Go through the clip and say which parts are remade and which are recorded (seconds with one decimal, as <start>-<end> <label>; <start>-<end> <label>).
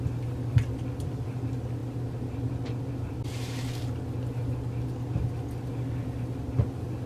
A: 0.0-7.1 recorded